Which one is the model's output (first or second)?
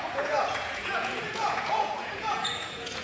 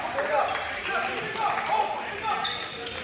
first